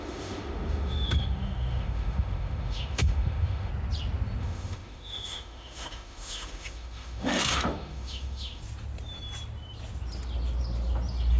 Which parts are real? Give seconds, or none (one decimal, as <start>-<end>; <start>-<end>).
3.7-4.4; 8.6-11.4